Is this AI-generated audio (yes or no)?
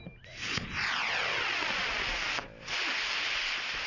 no